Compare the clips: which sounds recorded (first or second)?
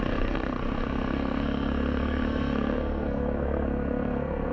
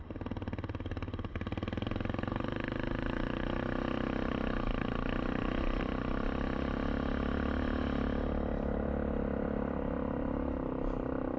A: second